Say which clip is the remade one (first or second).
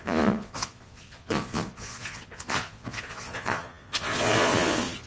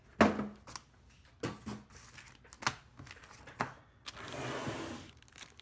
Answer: first